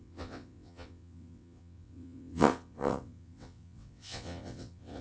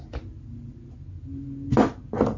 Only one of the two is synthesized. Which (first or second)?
first